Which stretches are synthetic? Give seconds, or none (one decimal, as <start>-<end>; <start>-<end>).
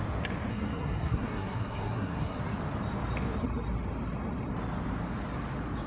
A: 0.5-2.4